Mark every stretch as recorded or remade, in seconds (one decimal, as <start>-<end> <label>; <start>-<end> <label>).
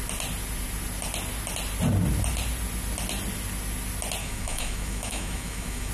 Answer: 0.0-4.2 recorded; 4.2-5.9 remade